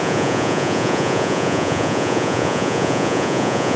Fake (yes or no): yes